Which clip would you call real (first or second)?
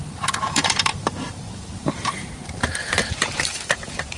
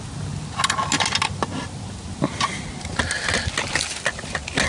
second